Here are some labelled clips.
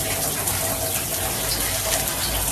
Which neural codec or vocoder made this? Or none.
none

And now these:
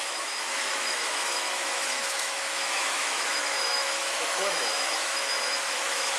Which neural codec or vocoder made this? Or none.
autoencoder, DAC-VAE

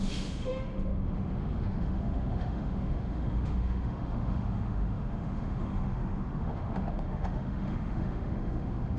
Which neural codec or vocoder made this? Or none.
autoencoder, DAC-VAE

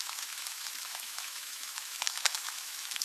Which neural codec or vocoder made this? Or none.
autoencoder, DAC-VAE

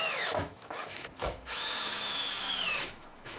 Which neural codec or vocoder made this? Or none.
autoencoder, DAC-VAE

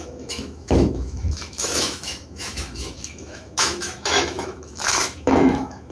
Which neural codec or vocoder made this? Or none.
autoencoder, DAC-VAE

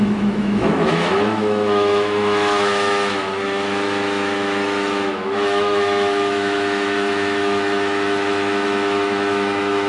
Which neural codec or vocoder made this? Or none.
autoencoder, DAC-VAE